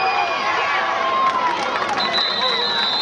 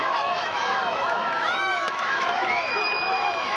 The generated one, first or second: second